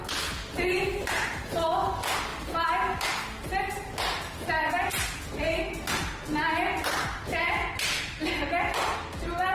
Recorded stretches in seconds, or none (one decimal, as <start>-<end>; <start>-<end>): 0.0-9.5